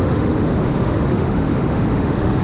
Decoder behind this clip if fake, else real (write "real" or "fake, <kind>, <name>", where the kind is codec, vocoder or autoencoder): fake, autoencoder, DAC-VAE